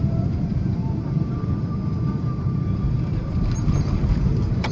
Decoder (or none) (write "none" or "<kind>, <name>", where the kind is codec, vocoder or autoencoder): vocoder, BigVGAN v2